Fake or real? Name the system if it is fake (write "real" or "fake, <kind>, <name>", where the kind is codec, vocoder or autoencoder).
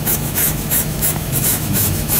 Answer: fake, autoencoder, DAC-VAE